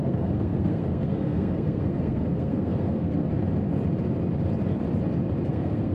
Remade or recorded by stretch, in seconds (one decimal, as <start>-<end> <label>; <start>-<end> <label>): 0.0-3.2 remade; 3.2-5.5 recorded; 5.5-5.9 remade